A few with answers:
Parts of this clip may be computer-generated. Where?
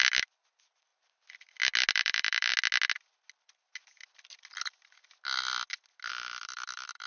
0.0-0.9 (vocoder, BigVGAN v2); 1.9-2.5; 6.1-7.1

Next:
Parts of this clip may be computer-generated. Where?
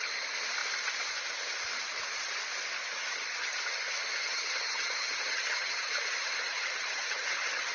2.8-3.6 (vocoder, HiFi-GAN); 4.2-5.8; 6.5-7.7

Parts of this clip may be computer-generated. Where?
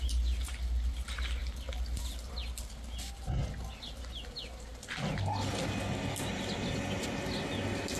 none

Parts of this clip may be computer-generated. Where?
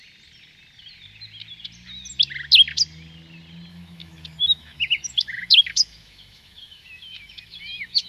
3.7-8.1 (autoencoder, DAC-VAE)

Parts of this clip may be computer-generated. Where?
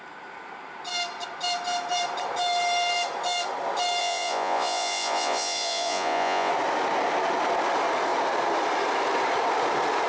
4.0-6.5 (vocoder, Vocos)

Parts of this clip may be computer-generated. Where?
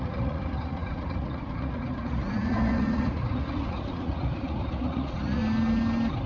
0.0-5.4 (vocoder, Vocos)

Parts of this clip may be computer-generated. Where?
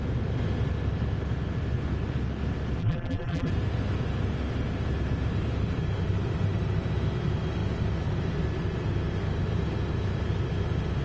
2.8-3.5 (vocoder, BigVGAN v2)